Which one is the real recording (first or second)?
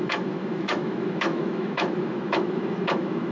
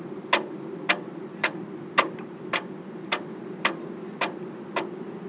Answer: second